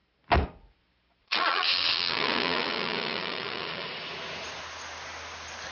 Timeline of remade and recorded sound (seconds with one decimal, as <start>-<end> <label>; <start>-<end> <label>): 0.0-1.2 recorded; 1.2-4.6 remade; 4.6-5.7 recorded